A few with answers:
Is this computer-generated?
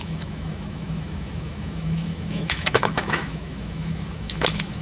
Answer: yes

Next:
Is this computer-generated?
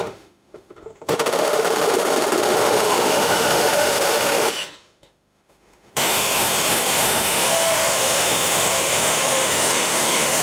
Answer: yes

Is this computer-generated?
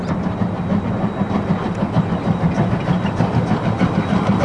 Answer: no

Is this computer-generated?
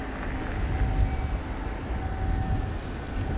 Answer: no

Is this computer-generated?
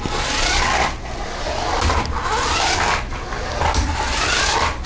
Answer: no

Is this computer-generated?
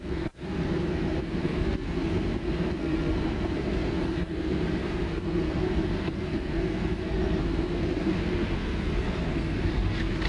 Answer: yes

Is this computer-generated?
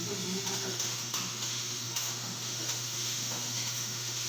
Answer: yes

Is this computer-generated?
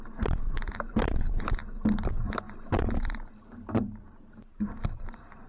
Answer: yes